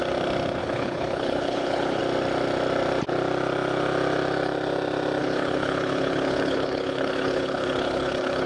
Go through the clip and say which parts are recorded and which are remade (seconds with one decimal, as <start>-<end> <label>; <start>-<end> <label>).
0.0-0.6 recorded; 0.6-2.0 remade; 2.0-5.2 recorded; 5.2-8.5 remade